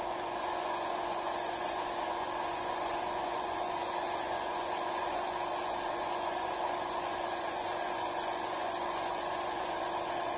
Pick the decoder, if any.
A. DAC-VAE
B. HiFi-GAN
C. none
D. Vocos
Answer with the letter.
D